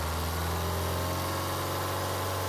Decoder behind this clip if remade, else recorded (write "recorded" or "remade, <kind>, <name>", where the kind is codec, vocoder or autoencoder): recorded